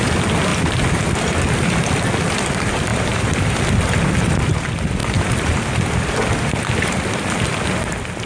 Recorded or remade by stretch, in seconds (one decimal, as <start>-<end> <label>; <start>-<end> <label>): 0.0-2.9 recorded; 2.9-3.6 remade; 3.6-8.3 recorded